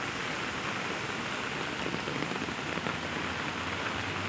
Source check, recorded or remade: recorded